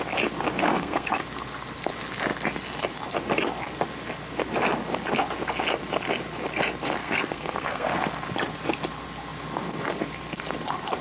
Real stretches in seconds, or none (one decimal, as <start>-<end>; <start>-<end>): 0.0-0.7; 1.2-7.0; 7.9-11.0